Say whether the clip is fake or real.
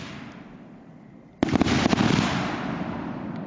real